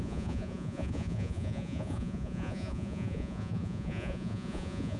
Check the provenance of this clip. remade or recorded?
remade